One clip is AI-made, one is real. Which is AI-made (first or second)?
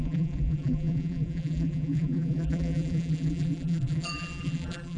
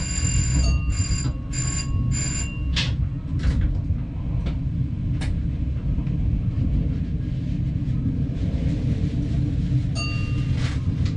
first